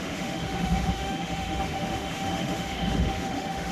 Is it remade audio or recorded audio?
remade